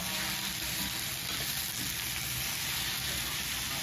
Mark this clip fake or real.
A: real